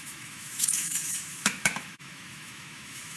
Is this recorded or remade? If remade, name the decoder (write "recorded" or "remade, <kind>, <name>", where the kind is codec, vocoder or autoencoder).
remade, autoencoder, DAC-VAE